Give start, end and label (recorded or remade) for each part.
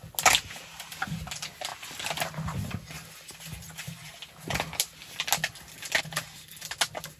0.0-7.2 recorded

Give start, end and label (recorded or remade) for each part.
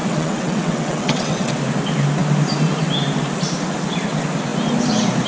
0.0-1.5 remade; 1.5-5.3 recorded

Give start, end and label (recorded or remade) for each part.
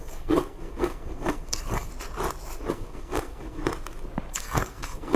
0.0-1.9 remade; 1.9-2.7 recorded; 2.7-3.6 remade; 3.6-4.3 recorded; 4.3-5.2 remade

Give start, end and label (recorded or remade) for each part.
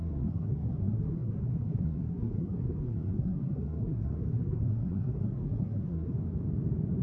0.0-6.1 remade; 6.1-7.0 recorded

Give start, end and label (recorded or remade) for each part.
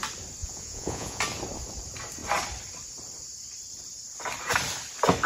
0.0-0.4 recorded; 0.4-1.2 remade; 1.2-5.3 recorded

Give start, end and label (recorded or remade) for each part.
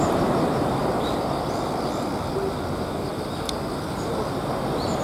0.0-5.0 recorded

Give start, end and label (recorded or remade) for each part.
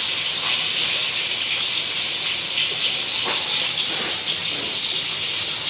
0.0-5.7 recorded